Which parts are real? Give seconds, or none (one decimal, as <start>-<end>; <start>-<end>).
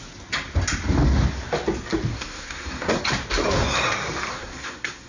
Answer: 0.0-2.1; 3.0-4.3